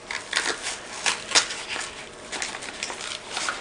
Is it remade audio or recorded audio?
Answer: recorded